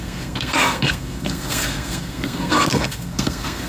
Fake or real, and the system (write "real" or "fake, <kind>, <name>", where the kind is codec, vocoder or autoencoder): fake, codec, SNAC